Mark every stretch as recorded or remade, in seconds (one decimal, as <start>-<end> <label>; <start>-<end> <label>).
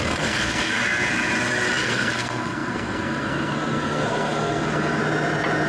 0.0-0.8 remade; 0.8-1.8 recorded; 1.8-5.0 remade; 5.0-5.7 recorded